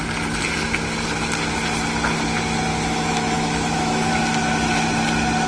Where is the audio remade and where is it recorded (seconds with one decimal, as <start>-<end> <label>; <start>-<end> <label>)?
0.0-2.7 recorded; 2.7-4.1 remade; 4.1-5.5 recorded